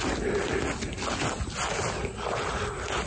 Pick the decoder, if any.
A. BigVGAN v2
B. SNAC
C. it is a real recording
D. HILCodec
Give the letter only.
C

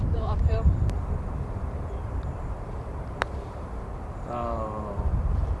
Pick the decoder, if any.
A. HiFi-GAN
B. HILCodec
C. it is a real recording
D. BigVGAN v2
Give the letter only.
D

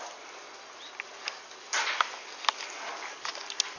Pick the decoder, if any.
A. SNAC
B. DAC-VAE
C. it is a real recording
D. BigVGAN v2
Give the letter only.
C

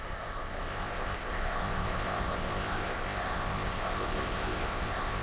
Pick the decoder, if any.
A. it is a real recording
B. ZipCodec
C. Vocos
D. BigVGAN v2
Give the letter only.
B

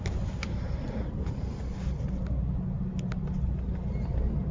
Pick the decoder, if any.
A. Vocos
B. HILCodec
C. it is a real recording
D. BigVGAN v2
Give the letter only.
C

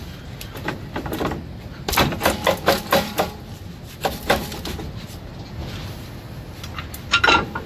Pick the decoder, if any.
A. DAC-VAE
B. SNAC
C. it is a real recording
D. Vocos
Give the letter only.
C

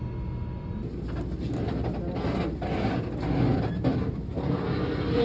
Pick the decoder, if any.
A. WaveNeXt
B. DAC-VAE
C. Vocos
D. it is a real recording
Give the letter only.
D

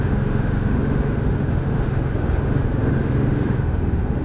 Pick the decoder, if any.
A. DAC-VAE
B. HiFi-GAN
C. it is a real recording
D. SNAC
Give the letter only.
A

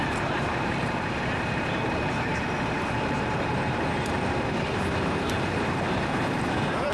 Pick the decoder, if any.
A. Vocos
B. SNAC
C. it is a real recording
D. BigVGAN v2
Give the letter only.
D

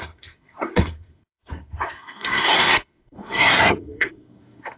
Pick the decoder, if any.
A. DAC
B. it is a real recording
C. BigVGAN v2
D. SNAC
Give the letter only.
D